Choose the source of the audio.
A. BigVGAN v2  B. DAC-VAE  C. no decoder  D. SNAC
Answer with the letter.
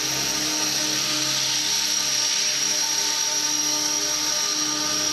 C